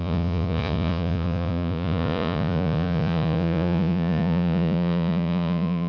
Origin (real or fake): fake